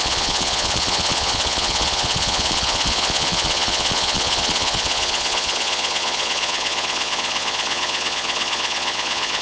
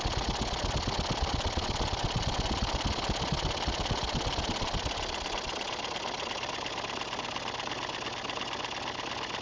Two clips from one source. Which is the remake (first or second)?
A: first